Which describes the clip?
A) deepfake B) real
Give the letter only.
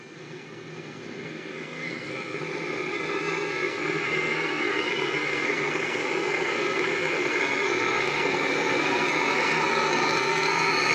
A